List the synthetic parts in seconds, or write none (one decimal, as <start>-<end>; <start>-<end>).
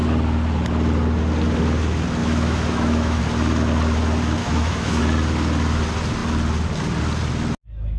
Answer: 2.2-3.2; 4.4-5.0